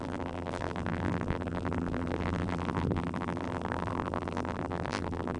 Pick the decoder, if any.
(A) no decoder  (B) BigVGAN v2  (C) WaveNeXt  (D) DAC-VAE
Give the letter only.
B